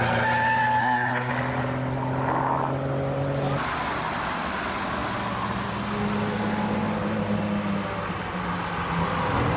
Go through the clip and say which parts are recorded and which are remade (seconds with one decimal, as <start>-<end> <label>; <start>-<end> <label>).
0.0-0.8 recorded; 0.8-1.3 remade; 1.3-9.6 recorded